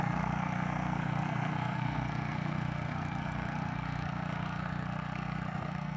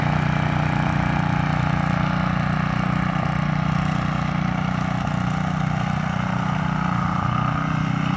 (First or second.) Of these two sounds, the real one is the second